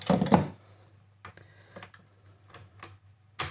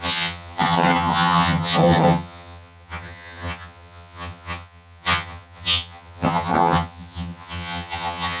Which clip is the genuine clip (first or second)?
first